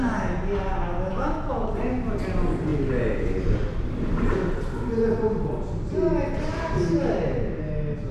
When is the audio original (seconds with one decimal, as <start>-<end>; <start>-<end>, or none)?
0.0-1.1; 1.7-8.1